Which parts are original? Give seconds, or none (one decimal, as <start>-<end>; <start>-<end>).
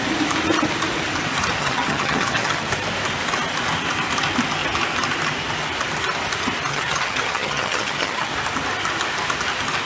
0.0-1.6; 2.7-6.7; 8.3-9.9